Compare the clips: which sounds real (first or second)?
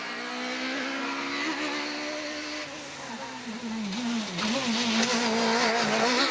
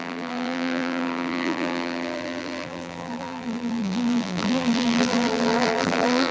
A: first